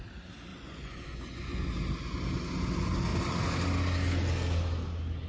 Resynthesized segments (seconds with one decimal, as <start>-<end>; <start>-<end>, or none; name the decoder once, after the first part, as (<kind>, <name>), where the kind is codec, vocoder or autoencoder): 0.5-1.6 (vocoder, Vocos)